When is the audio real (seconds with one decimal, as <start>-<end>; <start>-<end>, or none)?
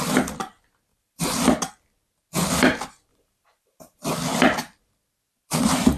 0.0-0.9; 1.4-3.1; 4.1-6.0